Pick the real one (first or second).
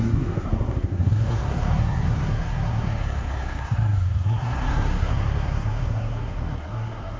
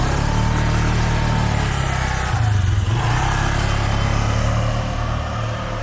second